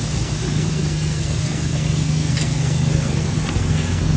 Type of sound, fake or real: fake